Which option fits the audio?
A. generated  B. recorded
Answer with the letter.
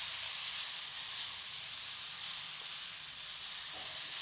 B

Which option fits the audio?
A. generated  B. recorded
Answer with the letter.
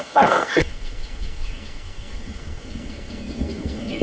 A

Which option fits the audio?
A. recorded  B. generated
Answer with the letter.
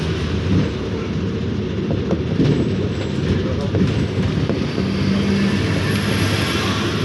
A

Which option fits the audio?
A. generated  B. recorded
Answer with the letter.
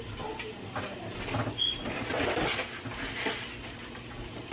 B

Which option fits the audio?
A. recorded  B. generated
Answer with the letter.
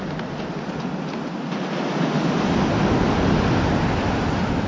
A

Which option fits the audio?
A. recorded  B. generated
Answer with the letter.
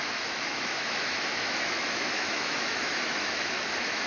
B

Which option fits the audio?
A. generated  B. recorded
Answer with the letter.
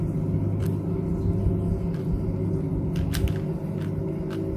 B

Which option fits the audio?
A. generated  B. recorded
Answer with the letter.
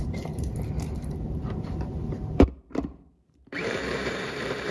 A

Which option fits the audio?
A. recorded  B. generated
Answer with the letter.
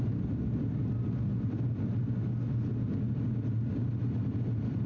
A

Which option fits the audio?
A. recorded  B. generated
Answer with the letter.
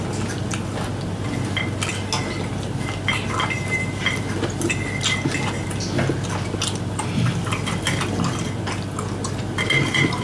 A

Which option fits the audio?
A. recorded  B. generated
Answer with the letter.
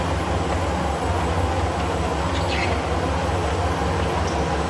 A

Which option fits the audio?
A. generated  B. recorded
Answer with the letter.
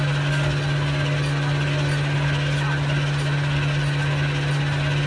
B